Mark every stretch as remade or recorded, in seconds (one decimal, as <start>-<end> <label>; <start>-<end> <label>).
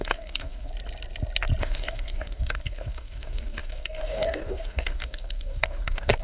0.0-0.7 remade; 0.7-1.6 recorded; 1.6-6.2 remade